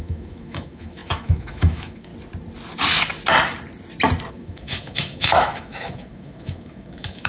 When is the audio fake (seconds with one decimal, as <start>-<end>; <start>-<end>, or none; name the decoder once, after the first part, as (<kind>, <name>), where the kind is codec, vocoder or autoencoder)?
0.0-2.1 (autoencoder, DAC-VAE); 4.3-7.3